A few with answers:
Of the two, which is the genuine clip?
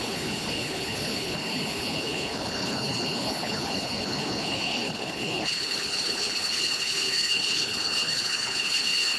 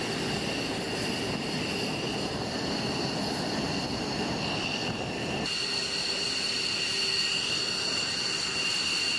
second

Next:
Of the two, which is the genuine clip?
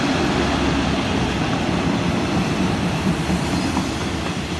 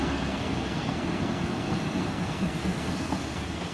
first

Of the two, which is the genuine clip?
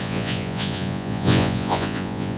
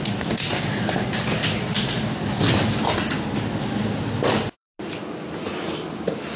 second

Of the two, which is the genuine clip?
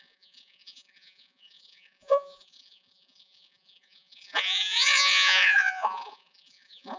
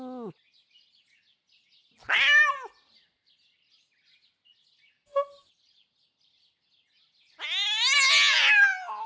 second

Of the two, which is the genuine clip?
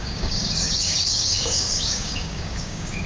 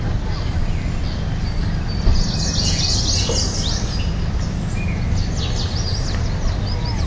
second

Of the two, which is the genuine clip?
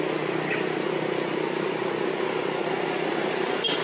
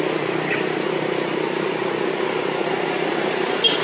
first